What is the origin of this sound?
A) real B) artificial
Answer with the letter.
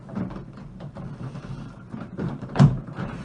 B